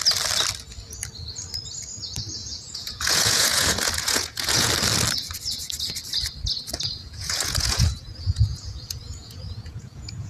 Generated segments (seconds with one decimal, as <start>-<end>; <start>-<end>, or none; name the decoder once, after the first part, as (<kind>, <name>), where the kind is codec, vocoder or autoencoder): 2.4-4.7 (vocoder, Vocos); 7.0-10.3